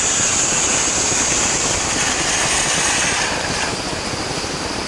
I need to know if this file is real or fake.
fake